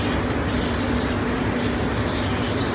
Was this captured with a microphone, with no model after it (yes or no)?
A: yes